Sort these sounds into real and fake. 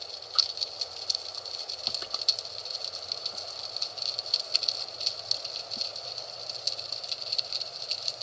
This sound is real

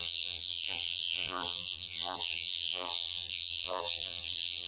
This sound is fake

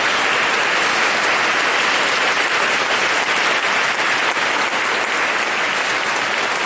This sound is real